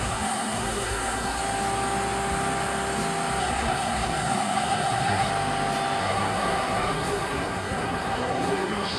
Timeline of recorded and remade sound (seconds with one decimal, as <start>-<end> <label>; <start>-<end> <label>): 0.0-1.4 remade; 1.4-3.4 recorded; 3.4-5.3 remade; 5.3-6.0 recorded; 6.0-9.0 remade